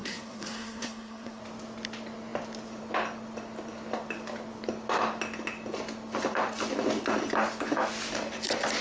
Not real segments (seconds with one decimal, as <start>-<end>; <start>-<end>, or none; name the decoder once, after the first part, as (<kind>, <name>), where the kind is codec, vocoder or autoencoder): 0.0-1.4 (codec, SNAC)